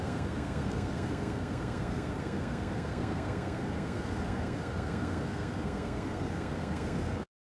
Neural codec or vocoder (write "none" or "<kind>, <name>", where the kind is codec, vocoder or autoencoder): codec, SNAC